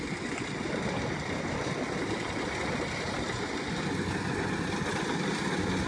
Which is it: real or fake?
real